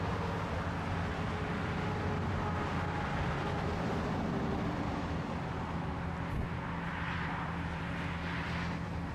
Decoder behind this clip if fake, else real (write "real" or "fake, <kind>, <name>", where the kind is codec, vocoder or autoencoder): real